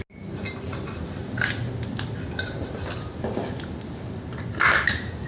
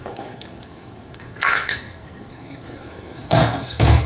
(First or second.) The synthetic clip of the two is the second